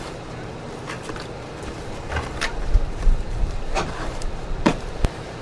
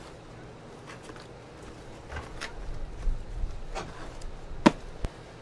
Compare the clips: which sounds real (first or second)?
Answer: second